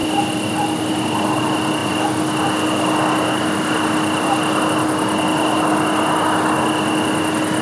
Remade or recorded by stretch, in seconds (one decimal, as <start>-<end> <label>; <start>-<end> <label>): 0.0-7.6 recorded